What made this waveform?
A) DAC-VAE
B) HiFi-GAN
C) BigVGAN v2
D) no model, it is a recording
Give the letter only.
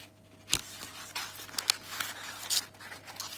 D